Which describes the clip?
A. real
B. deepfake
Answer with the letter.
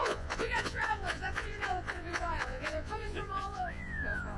B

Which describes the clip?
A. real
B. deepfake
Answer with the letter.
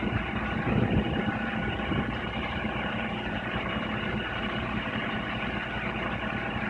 B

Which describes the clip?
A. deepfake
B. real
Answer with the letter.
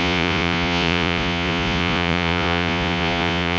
A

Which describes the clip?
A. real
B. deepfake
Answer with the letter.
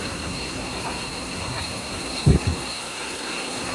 B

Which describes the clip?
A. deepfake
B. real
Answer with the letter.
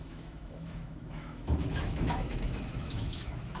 A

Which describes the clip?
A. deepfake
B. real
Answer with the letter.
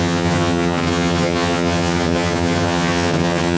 A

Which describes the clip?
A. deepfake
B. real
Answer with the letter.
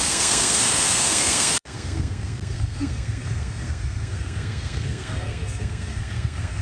A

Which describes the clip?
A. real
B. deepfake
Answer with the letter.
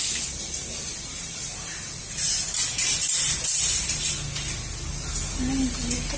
A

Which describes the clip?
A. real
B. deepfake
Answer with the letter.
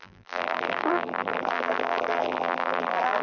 B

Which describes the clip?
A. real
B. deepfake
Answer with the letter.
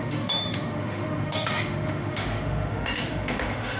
B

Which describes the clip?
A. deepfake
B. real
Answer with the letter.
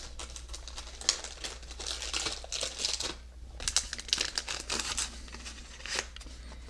B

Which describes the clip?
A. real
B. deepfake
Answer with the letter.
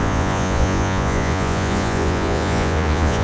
B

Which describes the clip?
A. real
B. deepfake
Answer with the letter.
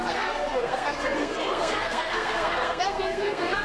B